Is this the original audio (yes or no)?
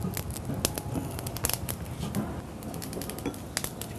yes